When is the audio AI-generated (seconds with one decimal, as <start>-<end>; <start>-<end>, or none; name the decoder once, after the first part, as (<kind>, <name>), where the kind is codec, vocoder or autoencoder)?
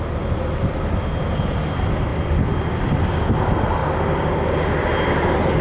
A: none